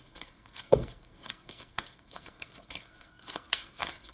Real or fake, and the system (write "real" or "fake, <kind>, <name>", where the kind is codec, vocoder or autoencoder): fake, codec, SNAC